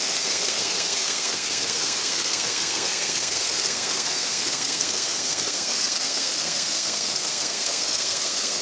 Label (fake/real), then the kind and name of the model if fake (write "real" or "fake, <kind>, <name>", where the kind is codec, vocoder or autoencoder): fake, codec, SNAC